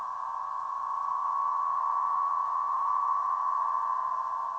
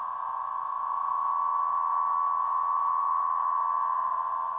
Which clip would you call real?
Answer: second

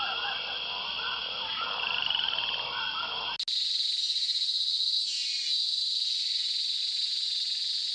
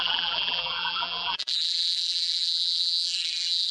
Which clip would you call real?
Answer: first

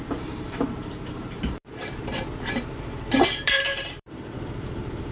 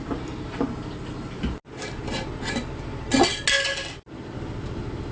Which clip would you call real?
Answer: second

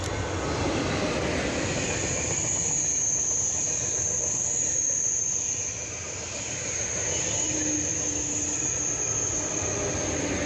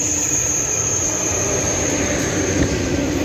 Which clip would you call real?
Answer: first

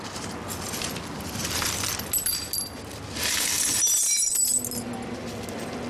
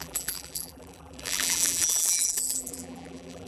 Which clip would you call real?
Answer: first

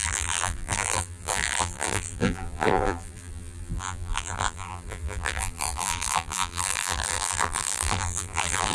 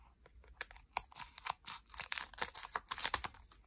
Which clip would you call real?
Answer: second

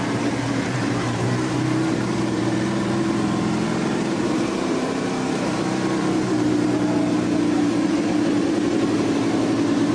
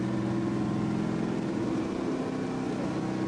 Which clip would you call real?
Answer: second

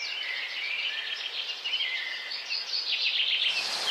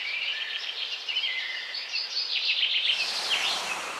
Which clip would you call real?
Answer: first